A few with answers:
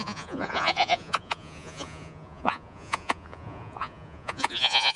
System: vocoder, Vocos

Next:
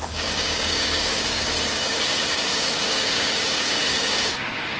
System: codec, DAC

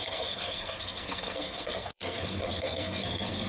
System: codec, SNAC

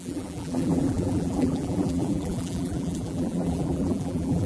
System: vocoder, BigVGAN v2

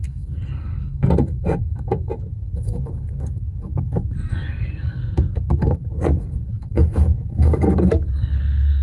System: codec, SNAC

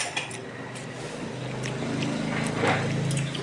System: none